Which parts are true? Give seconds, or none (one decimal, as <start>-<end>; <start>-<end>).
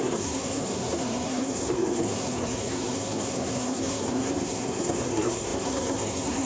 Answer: none